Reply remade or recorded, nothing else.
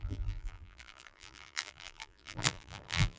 remade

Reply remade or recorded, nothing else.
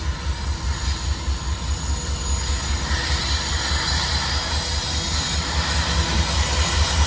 recorded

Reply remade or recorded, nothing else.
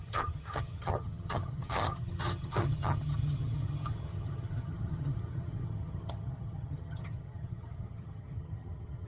remade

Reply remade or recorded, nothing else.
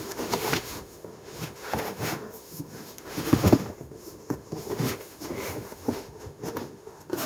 remade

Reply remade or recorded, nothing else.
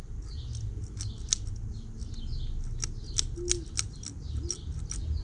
recorded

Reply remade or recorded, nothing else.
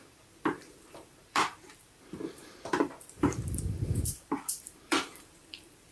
remade